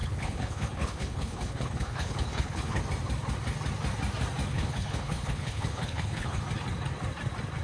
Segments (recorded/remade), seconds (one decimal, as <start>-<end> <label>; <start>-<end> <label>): 0.0-2.8 remade; 2.8-4.5 recorded; 4.5-6.4 remade; 6.4-7.6 recorded